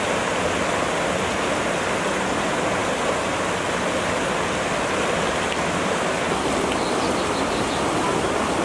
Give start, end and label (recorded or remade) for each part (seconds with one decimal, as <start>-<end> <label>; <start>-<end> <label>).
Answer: 0.0-8.6 recorded